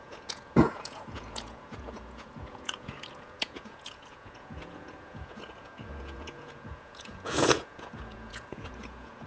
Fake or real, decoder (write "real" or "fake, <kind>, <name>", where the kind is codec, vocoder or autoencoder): fake, vocoder, Vocos